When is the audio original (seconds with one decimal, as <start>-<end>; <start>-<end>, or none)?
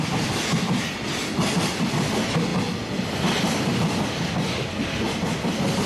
0.0-5.9